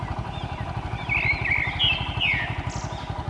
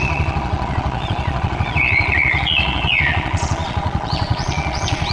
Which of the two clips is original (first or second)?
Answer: first